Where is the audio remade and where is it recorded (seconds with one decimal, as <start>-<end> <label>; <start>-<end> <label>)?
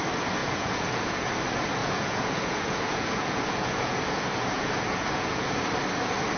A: 0.0-0.4 recorded; 0.4-1.3 remade; 1.3-1.8 recorded; 1.8-5.6 remade; 5.6-6.4 recorded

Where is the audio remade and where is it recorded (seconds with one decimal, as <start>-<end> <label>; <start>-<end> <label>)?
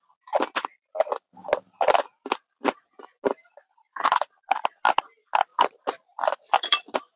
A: 0.0-7.2 recorded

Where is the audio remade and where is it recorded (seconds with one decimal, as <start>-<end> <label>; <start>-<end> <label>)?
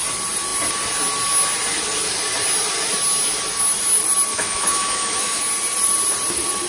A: 0.0-4.3 recorded; 4.3-5.4 remade; 5.4-6.7 recorded